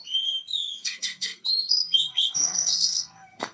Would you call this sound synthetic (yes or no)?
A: yes